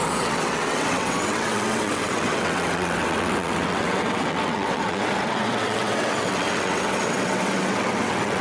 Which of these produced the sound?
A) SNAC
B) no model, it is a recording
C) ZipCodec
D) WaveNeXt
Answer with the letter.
D